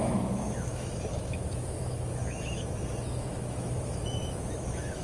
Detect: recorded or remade remade